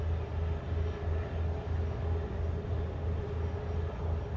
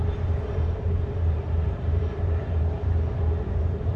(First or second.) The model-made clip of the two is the second